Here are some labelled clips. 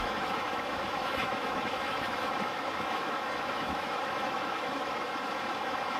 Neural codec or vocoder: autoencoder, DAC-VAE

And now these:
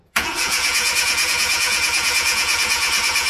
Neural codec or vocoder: vocoder, Vocos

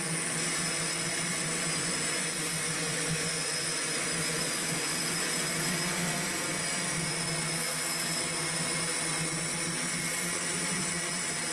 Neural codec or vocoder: vocoder, Vocos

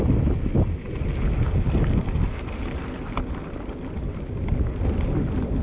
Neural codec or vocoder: none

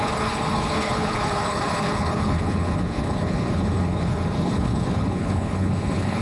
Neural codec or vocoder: codec, HILCodec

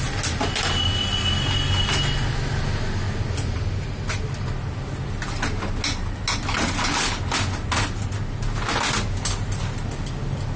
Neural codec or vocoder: none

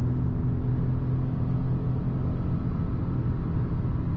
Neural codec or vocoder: none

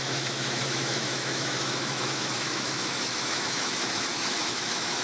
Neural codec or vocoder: autoencoder, DAC-VAE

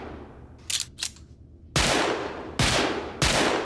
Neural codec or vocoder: none